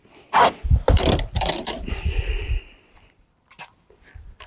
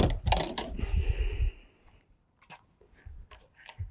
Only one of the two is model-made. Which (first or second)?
first